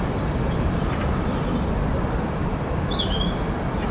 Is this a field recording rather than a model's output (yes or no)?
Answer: no